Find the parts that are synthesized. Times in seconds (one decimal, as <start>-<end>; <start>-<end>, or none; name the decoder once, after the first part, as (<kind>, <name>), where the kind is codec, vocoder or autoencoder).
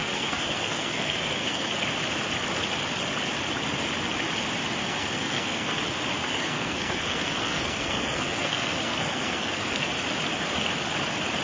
0.0-1.7 (codec, SNAC); 4.8-5.8; 6.2-9.9